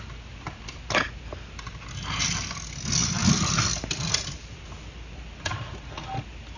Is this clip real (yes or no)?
yes